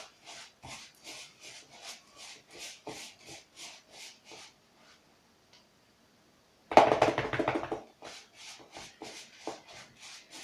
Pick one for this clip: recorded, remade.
recorded